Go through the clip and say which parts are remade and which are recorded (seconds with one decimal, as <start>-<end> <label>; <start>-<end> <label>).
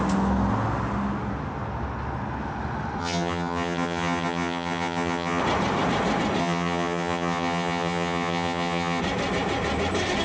0.0-3.0 recorded; 3.0-5.4 remade; 5.4-6.4 recorded; 6.4-9.0 remade; 9.0-10.2 recorded